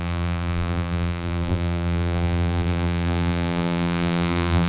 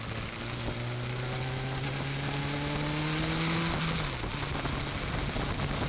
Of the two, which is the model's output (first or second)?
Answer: first